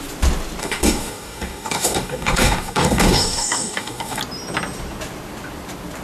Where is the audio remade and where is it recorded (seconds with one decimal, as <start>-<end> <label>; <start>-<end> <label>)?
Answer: 0.0-0.6 recorded; 0.6-4.2 remade; 4.2-6.0 recorded